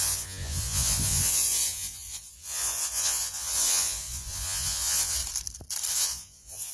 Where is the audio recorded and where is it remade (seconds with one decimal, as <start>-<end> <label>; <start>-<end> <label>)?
0.0-5.2 remade; 5.2-5.9 recorded; 5.9-6.7 remade